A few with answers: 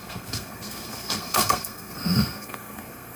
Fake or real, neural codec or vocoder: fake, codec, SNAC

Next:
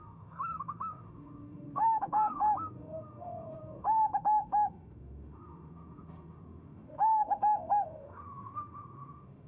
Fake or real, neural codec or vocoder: fake, autoencoder, DAC-VAE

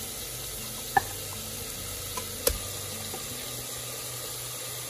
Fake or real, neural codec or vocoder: real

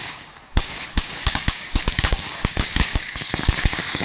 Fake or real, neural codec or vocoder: fake, codec, DAC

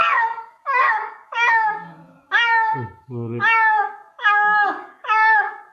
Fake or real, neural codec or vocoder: fake, codec, DAC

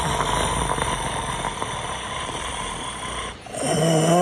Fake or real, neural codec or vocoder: real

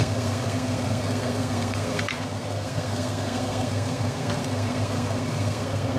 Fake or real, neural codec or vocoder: fake, codec, SNAC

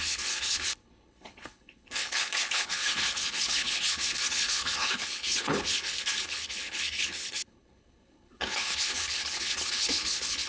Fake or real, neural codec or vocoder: fake, codec, HILCodec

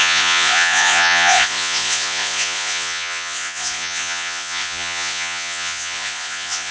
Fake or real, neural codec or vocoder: fake, vocoder, Vocos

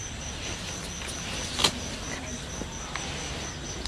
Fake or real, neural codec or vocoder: real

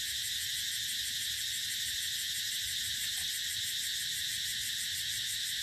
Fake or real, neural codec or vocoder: real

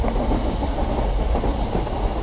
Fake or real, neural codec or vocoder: real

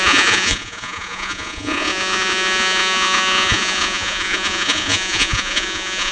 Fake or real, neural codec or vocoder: fake, vocoder, Vocos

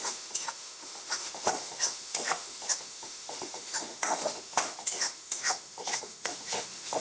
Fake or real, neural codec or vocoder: fake, autoencoder, DAC-VAE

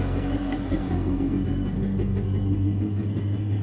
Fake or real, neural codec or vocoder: fake, codec, SNAC